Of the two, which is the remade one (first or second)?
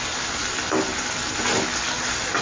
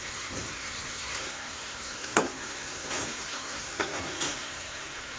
second